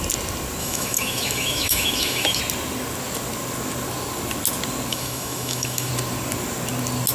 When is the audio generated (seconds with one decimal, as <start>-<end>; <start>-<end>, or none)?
0.6-2.4; 4.9-5.9